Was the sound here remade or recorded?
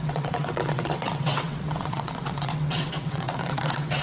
remade